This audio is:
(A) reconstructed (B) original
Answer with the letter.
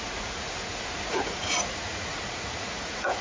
A